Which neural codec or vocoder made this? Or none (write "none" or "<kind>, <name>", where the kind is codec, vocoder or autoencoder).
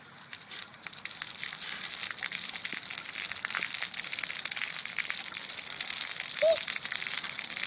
none